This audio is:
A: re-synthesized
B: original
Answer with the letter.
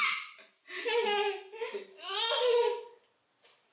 B